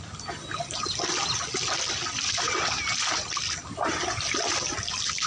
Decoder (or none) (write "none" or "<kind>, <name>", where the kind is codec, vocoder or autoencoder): none